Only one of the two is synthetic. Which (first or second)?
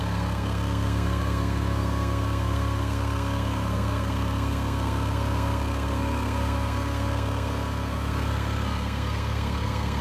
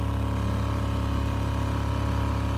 first